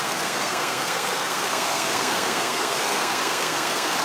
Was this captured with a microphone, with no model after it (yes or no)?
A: no